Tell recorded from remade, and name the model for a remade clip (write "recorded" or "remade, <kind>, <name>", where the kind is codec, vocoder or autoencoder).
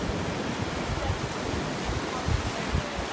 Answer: recorded